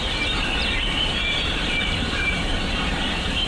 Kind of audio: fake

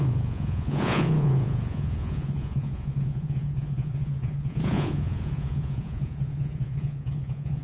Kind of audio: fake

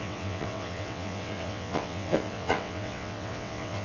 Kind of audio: fake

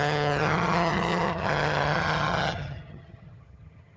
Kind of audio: fake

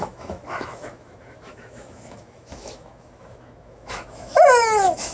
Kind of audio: fake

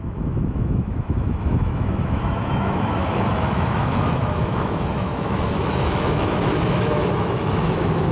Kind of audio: fake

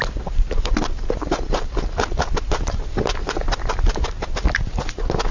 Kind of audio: real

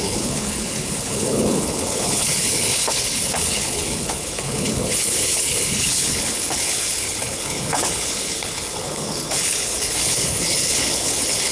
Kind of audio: fake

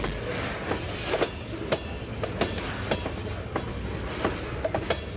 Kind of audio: real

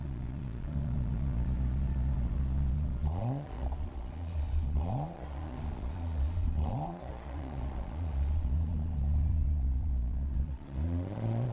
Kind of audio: fake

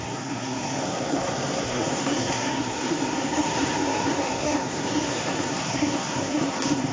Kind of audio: fake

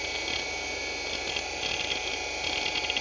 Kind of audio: real